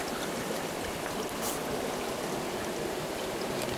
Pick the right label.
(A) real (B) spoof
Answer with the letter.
A